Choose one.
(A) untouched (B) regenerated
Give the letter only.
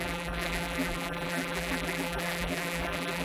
B